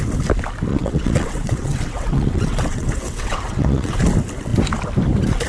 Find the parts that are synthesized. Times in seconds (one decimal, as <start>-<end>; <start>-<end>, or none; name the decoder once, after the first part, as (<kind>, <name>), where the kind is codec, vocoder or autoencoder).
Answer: 0.7-4.0 (vocoder, WaveNeXt)